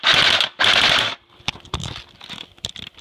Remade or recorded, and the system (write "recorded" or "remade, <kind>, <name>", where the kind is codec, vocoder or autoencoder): remade, vocoder, BigVGAN v2